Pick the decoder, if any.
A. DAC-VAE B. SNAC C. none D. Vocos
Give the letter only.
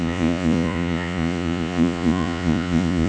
D